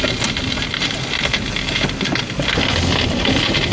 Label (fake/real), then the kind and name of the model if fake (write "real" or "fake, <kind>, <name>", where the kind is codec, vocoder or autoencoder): real